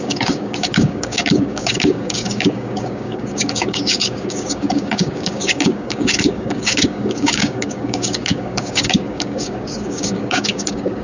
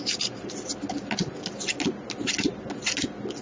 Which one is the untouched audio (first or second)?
second